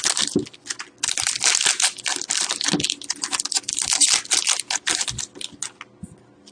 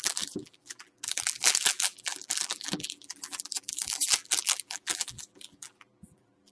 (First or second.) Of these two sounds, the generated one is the second